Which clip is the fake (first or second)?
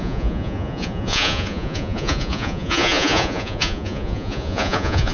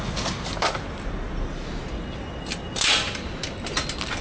first